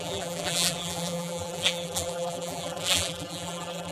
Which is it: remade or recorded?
remade